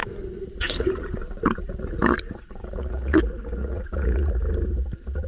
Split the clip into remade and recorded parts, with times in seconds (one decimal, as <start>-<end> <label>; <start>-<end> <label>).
0.0-3.2 remade; 3.2-3.6 recorded; 3.6-4.3 remade; 4.3-5.3 recorded